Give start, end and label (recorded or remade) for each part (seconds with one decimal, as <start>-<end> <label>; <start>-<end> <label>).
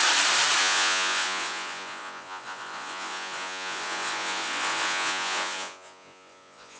0.0-0.6 recorded; 0.6-6.8 remade